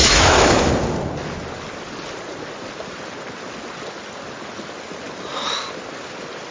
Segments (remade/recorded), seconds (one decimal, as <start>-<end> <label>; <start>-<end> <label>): 0.0-0.7 remade; 0.7-6.5 recorded